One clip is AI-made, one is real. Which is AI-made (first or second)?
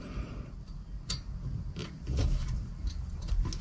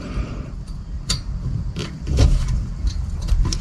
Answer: second